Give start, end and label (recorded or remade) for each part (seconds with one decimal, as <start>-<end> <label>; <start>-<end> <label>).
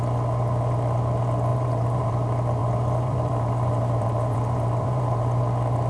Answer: 0.0-1.5 recorded; 1.5-2.1 remade; 2.1-2.6 recorded; 2.6-5.4 remade; 5.4-5.9 recorded